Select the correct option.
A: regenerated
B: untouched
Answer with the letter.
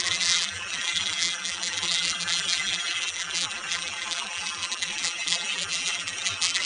A